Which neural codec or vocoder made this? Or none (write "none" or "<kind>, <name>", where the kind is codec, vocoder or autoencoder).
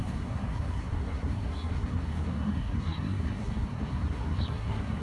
codec, SNAC